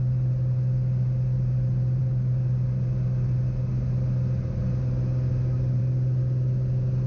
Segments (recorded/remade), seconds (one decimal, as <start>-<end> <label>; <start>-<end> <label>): 0.0-7.1 recorded